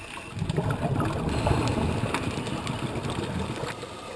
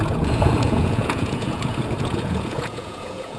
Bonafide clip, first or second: first